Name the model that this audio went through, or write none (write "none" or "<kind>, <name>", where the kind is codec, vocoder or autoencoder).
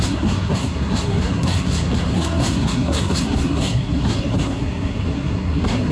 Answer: codec, SNAC